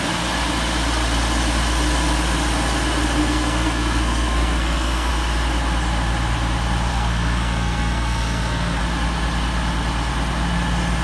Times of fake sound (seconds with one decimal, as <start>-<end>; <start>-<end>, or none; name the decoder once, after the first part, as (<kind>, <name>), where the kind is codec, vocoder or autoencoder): 3.2-5.1 (codec, SNAC); 6.9-8.8